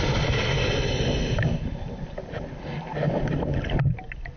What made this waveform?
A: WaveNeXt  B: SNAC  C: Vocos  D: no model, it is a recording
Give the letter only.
D